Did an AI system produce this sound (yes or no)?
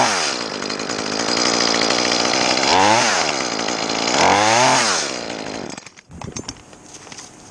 no